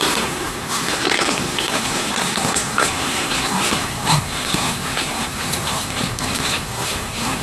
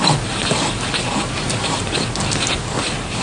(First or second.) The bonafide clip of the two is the second